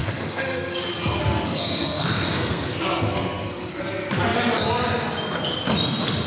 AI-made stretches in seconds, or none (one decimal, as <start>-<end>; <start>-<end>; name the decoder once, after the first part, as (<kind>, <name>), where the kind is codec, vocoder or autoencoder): 0.0-3.8 (codec, SNAC)